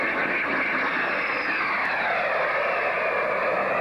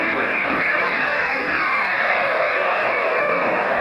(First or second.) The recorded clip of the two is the first